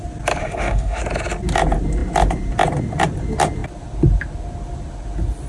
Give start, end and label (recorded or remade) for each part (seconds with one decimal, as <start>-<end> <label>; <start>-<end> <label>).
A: 0.0-0.4 recorded; 0.4-1.0 remade; 1.0-5.5 recorded